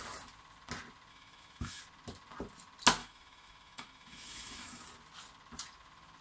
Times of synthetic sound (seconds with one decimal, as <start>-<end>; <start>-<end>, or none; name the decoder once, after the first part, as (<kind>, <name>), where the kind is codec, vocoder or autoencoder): 1.1-1.8 (autoencoder, DAC-VAE); 3.0-4.8